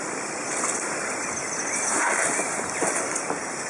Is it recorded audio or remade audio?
remade